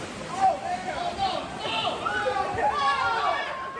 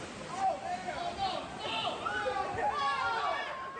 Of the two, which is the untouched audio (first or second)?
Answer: second